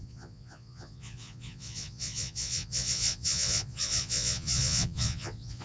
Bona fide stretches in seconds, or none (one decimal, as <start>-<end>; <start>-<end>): none